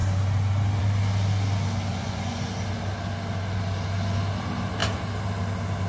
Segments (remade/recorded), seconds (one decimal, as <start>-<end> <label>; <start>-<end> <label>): 0.0-1.9 recorded; 1.9-2.5 remade; 2.5-5.9 recorded